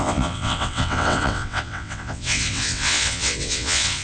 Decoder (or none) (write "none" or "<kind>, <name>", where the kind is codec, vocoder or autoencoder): vocoder, WaveNeXt